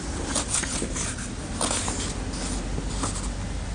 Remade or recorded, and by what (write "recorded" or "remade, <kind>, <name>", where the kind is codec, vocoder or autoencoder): recorded